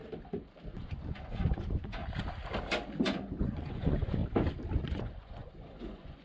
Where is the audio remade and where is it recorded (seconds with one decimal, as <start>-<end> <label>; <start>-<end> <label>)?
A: 0.0-0.7 recorded; 0.7-2.0 remade; 2.0-3.0 recorded; 3.0-4.2 remade; 4.2-4.8 recorded; 4.8-6.2 remade